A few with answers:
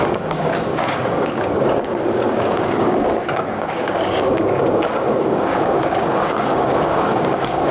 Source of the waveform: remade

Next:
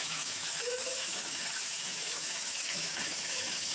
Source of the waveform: remade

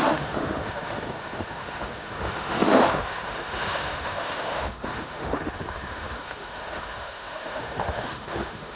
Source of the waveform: remade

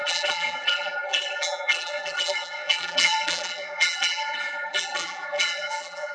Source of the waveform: remade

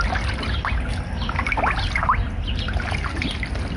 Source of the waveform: recorded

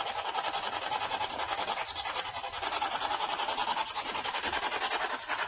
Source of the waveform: recorded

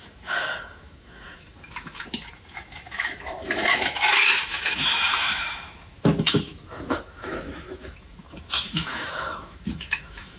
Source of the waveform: remade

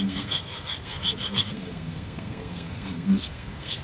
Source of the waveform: remade